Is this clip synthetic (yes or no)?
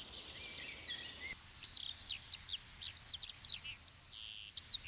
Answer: no